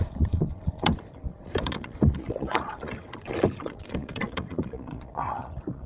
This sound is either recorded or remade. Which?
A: remade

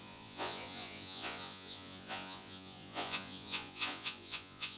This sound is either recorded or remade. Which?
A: remade